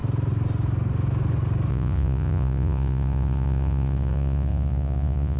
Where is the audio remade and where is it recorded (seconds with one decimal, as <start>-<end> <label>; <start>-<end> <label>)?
0.0-1.7 recorded; 1.7-5.4 remade